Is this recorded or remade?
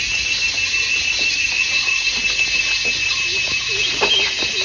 recorded